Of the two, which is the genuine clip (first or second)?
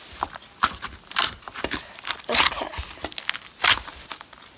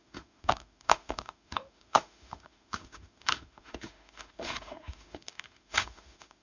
first